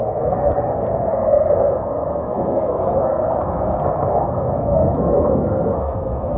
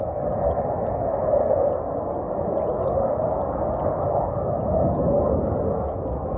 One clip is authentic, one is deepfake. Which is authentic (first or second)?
second